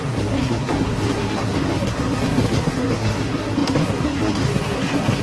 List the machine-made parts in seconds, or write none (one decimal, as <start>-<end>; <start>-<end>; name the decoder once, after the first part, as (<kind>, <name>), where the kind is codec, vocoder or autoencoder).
0.0-5.2 (codec, SNAC)